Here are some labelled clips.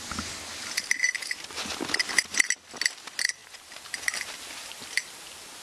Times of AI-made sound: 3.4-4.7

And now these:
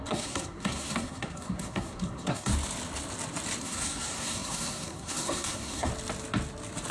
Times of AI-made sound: 0.0-2.5; 3.6-5.9

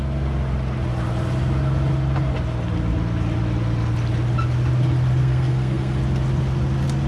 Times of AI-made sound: 5.2-6.0

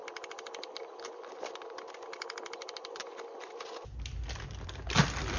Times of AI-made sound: none

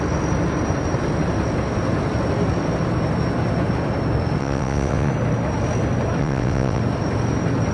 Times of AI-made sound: 4.4-5.1; 6.2-6.8

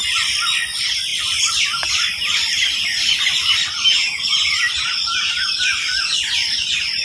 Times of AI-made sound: none

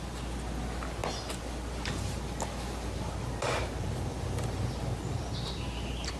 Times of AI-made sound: none